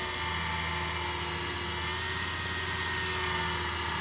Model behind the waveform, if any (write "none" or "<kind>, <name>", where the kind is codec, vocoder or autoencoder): none